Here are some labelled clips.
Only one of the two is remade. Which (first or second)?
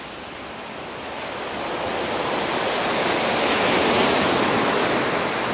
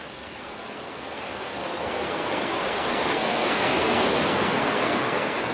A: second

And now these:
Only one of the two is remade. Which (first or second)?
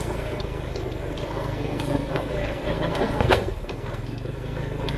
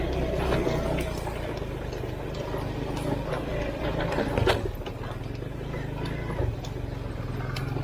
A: first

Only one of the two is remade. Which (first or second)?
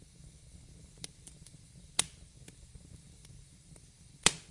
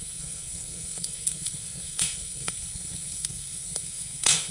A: second